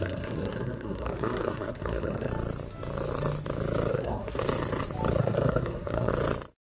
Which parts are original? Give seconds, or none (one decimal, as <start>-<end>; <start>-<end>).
2.3-3.9; 4.4-5.2; 6.1-6.6